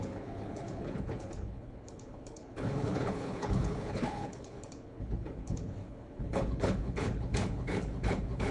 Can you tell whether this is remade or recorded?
remade